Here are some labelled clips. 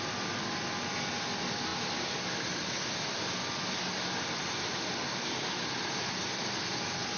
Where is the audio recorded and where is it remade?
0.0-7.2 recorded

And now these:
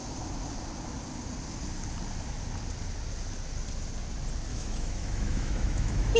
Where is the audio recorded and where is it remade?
0.0-4.5 recorded; 4.5-6.2 remade

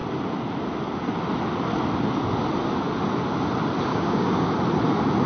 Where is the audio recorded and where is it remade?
0.0-3.9 recorded; 3.9-4.5 remade; 4.5-5.3 recorded

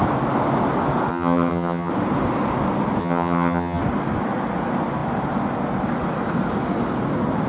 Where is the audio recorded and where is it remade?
0.0-1.1 recorded; 1.1-1.9 remade; 1.9-3.0 recorded; 3.0-3.8 remade; 3.8-7.5 recorded

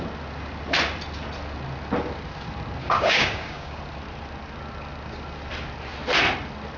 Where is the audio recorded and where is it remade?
0.0-2.8 recorded; 2.8-3.8 remade; 3.8-6.8 recorded